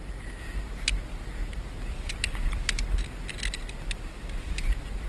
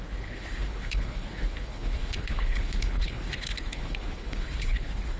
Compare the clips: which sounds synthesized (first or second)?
second